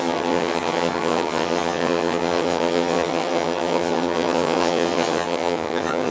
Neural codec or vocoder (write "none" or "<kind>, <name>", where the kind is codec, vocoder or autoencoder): vocoder, HiFi-GAN